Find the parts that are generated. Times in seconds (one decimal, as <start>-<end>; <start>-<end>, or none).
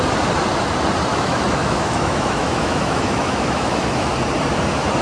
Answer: 1.1-4.1